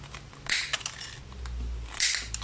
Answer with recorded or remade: recorded